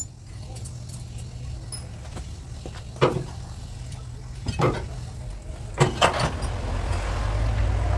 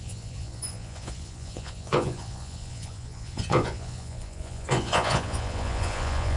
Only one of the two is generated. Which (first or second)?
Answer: second